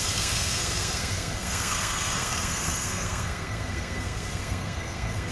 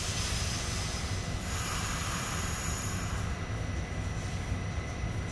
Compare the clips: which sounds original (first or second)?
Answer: second